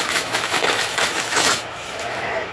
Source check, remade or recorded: remade